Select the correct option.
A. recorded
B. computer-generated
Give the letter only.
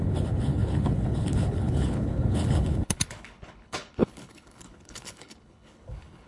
B